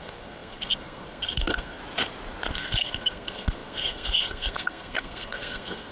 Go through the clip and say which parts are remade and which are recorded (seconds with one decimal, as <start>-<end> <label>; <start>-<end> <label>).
0.0-1.8 remade; 1.8-2.5 recorded; 2.5-5.9 remade